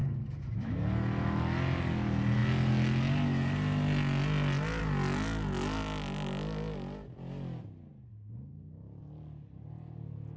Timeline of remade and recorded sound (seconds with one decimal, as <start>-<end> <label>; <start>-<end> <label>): 0.0-0.7 remade; 0.7-7.9 recorded; 7.9-9.0 remade; 9.0-10.4 recorded